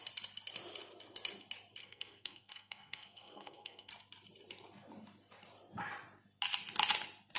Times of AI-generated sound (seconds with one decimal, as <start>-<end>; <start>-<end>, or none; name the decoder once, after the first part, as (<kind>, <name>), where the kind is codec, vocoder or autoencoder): 1.8-3.9 (codec, SNAC)